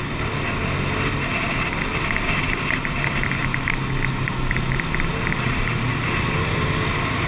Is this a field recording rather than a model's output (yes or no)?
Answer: yes